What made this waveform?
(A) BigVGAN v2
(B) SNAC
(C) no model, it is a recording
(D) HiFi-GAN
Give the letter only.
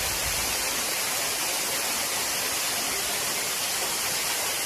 A